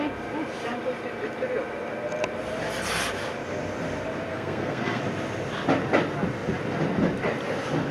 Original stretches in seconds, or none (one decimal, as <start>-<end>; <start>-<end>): 0.0-4.3; 5.0-7.9